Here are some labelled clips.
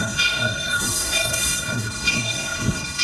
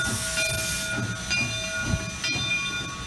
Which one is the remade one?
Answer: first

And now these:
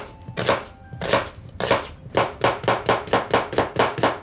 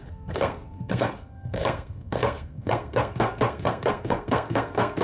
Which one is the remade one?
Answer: second